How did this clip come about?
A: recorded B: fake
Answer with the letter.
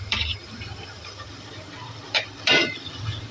B